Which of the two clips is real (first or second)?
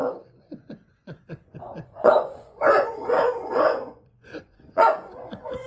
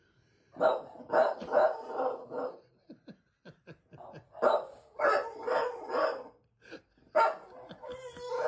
second